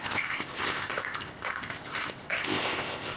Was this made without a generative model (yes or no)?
no